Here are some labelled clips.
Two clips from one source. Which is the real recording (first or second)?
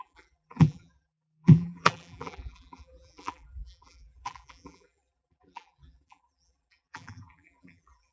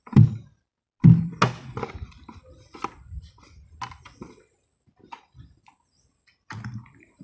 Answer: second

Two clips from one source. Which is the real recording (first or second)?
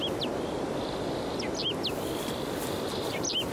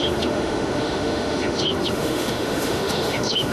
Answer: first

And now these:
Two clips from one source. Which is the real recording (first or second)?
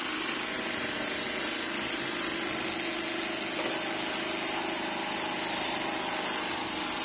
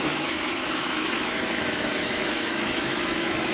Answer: first